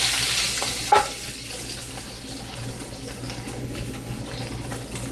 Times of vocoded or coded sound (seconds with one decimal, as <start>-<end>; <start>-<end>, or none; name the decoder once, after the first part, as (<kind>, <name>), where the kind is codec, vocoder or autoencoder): 1.0-1.5 (codec, HILCodec); 3.6-4.2